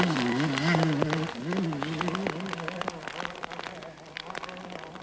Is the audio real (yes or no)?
yes